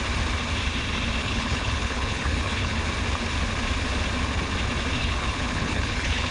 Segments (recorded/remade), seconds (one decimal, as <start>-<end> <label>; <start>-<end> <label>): 0.0-1.2 recorded; 1.2-2.8 remade; 2.8-5.0 recorded; 5.0-6.3 remade